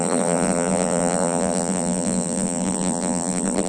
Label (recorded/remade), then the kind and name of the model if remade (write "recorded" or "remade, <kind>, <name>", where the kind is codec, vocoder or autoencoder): remade, vocoder, BigVGAN v2